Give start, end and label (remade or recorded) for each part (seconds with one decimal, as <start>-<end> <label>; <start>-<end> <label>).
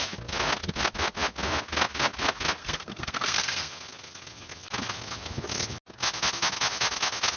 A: 0.0-2.6 recorded; 2.6-3.7 remade; 3.7-7.4 recorded